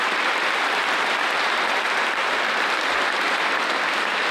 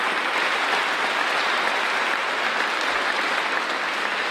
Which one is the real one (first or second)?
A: second